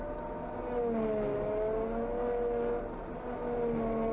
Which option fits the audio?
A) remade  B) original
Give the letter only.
B